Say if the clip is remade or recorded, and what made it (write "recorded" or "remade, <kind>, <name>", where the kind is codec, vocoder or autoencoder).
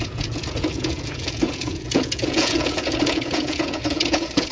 remade, vocoder, Vocos